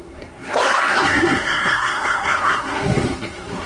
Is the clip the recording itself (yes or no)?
no